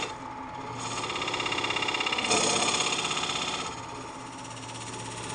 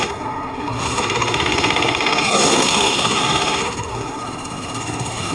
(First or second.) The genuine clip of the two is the first